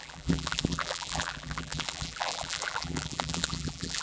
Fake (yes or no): yes